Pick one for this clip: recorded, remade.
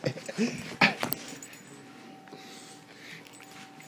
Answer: recorded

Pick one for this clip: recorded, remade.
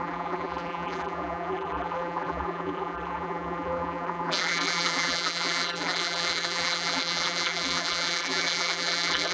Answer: remade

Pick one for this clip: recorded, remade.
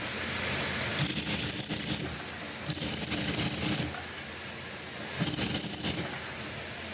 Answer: recorded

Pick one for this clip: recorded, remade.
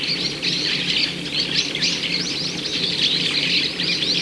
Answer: recorded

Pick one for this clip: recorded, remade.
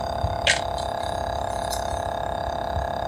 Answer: recorded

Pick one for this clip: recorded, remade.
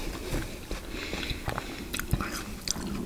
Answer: recorded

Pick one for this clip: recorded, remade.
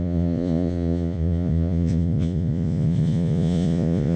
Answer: remade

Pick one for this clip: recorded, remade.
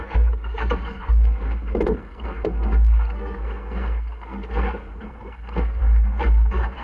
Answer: remade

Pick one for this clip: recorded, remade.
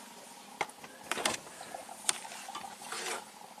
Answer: remade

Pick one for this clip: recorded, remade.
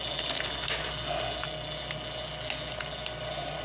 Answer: recorded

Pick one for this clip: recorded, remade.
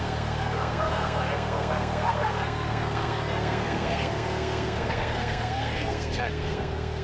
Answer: remade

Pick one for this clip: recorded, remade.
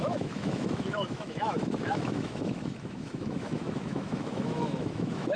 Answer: remade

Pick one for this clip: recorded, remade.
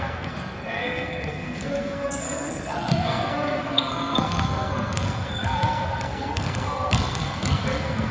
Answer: remade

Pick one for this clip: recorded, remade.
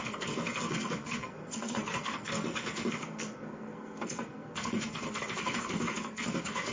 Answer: remade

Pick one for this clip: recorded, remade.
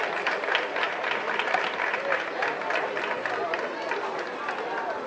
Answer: recorded